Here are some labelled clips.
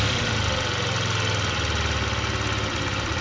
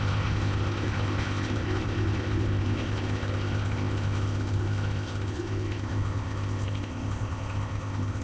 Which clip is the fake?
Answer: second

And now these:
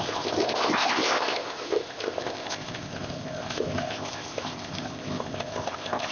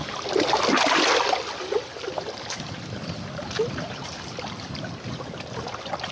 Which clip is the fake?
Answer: first